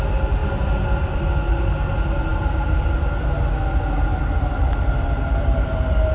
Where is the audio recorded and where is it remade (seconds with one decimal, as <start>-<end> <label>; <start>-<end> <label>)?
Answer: 0.0-6.1 recorded